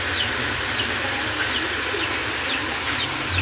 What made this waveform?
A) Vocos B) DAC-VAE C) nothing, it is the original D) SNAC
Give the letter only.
C